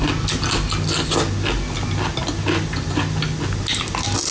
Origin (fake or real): real